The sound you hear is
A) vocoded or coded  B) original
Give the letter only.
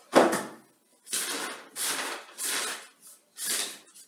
B